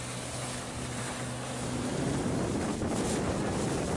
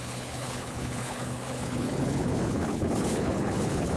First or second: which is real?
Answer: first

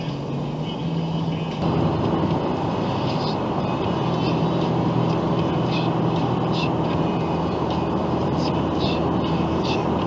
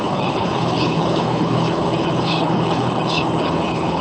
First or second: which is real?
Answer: first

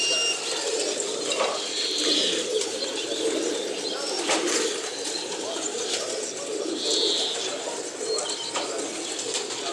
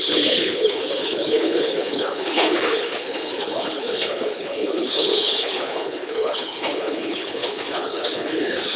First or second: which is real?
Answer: first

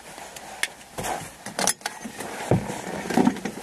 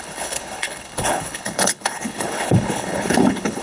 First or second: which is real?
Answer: first